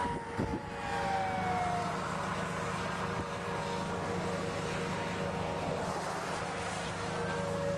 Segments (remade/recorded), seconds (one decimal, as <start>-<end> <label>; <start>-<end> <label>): 0.0-7.8 recorded

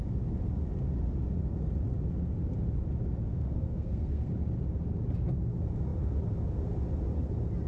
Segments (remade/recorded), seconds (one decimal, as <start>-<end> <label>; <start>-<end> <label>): 0.0-3.3 recorded; 3.3-4.3 remade; 4.3-7.7 recorded

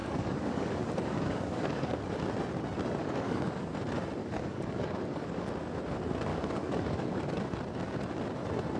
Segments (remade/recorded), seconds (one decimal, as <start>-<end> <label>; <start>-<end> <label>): 0.0-2.0 remade; 2.0-3.0 recorded; 3.0-3.6 remade; 3.6-4.2 recorded; 4.2-5.5 remade; 5.5-6.3 recorded; 6.3-7.4 remade; 7.4-8.8 recorded

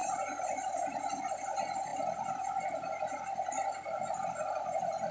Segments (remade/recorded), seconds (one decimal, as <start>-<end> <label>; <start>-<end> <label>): 0.0-0.6 remade; 0.6-5.1 recorded

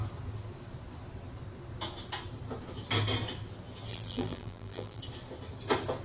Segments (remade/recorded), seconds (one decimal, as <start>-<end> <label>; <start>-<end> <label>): 0.0-3.9 recorded; 3.9-5.0 remade; 5.0-6.0 recorded